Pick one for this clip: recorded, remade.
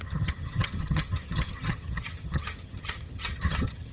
remade